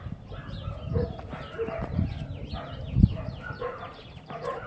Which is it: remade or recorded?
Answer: recorded